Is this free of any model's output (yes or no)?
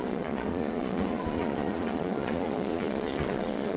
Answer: no